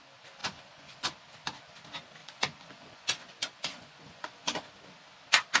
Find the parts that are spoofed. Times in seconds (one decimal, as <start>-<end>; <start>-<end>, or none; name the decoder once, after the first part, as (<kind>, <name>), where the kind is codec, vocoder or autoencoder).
0.4-1.1 (vocoder, Vocos); 2.2-4.7